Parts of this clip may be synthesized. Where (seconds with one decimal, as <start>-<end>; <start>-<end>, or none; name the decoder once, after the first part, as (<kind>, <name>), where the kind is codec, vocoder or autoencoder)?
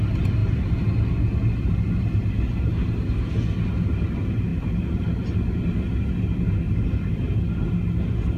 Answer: none